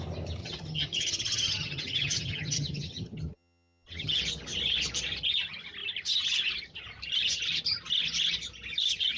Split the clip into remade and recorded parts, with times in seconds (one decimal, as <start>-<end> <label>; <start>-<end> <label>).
0.0-0.4 recorded; 0.4-4.2 remade; 4.2-9.2 recorded